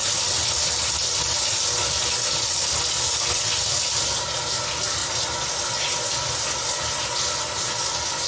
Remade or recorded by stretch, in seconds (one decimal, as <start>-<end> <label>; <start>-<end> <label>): 0.0-8.3 recorded